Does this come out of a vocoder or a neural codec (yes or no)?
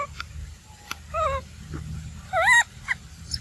no